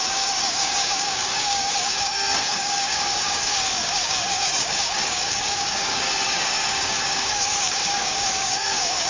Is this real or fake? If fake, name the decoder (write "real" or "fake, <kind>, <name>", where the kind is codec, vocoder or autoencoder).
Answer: fake, codec, DAC